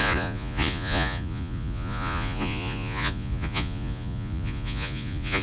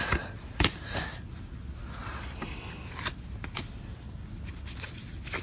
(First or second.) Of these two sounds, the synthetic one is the first